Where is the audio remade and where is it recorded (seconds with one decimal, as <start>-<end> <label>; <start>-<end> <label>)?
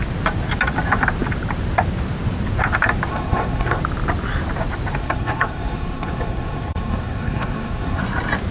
0.0-3.1 recorded; 3.1-3.8 remade; 3.8-5.0 recorded; 5.0-8.0 remade; 8.0-8.5 recorded